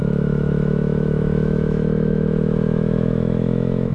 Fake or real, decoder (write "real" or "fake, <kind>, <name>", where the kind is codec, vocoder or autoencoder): fake, autoencoder, DAC-VAE